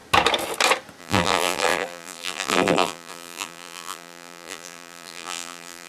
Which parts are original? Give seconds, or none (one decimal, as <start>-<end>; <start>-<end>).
0.0-1.0